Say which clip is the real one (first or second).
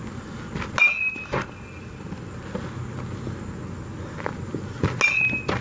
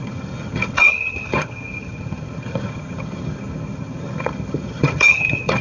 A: first